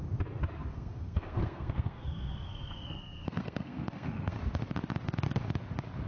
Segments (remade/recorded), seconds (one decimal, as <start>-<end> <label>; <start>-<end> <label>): 0.0-0.7 recorded; 0.7-4.4 remade; 4.4-6.1 recorded